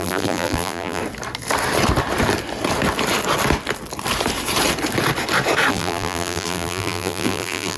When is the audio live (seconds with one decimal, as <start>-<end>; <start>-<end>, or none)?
1.0-5.7

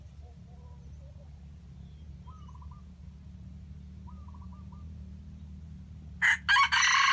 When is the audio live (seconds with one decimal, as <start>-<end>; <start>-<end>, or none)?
0.0-7.1

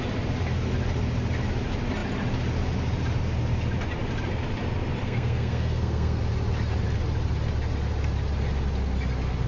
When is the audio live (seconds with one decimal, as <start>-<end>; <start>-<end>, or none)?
0.0-5.0; 6.2-9.5

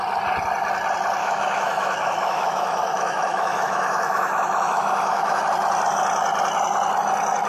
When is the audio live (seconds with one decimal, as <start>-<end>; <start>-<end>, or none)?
0.0-1.2; 5.4-7.5

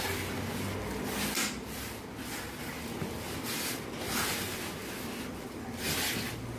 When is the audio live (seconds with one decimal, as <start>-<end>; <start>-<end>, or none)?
0.0-6.6

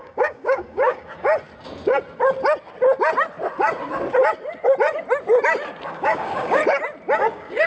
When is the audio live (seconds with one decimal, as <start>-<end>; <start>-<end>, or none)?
1.3-5.9; 6.6-7.3